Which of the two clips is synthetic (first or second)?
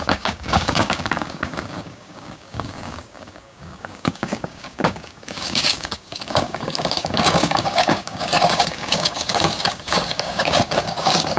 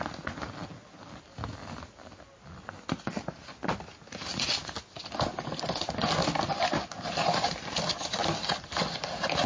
first